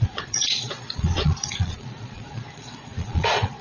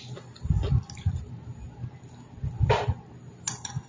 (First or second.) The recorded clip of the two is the second